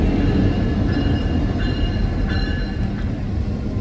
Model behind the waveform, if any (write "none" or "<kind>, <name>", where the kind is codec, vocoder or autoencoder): none